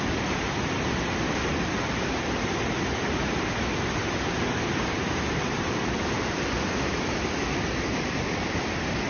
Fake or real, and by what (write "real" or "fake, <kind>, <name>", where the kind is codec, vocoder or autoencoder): fake, vocoder, BigVGAN v2